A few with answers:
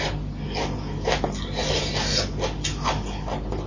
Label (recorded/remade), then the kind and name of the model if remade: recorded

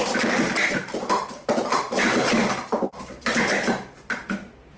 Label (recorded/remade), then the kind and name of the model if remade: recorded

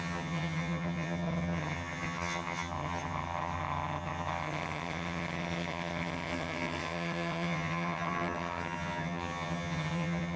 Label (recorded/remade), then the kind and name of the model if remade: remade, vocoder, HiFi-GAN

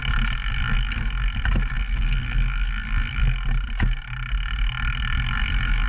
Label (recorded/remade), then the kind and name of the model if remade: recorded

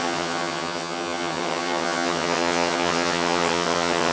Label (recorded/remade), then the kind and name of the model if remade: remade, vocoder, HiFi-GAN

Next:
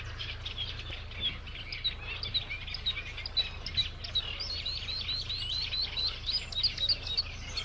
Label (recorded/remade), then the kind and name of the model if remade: recorded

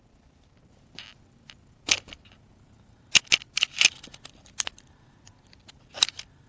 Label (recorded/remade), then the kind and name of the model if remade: recorded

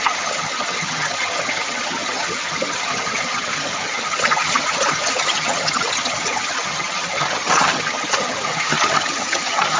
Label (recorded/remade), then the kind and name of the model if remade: remade, vocoder, HiFi-GAN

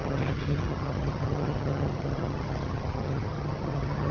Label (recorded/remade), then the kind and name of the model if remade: remade, vocoder, HiFi-GAN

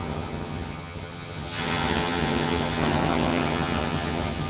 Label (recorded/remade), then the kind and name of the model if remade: remade, vocoder, HiFi-GAN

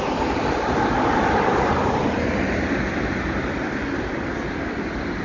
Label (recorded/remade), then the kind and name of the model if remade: recorded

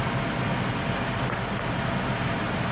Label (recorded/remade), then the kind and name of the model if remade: recorded